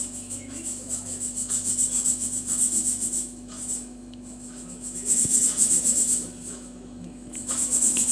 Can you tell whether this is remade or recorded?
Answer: remade